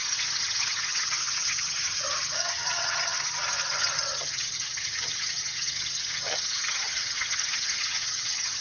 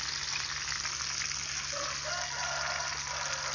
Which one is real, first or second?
second